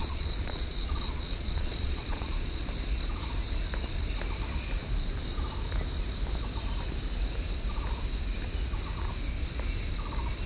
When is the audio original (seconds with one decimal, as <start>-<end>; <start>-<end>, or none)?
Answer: 2.6-10.5